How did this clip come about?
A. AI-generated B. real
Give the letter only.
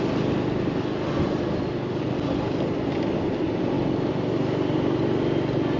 B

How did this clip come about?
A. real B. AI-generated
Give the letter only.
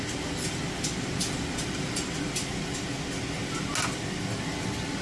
A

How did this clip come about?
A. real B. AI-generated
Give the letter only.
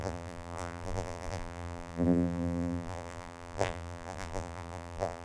B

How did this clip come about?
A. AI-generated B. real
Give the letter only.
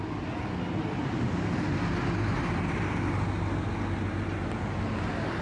B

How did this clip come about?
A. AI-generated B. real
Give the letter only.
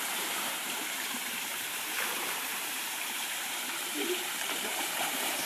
A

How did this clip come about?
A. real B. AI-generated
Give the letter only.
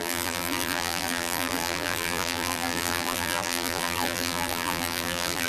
B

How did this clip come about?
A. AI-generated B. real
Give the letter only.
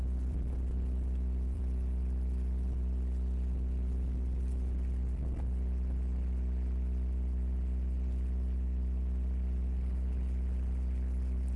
A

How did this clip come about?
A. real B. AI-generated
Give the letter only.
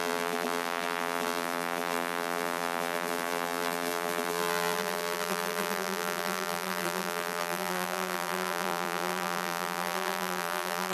B